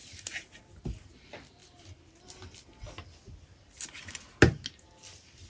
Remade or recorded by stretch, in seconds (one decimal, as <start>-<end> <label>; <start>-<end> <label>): 0.0-5.5 recorded